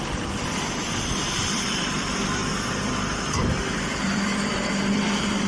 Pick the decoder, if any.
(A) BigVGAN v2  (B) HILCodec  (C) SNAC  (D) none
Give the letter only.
A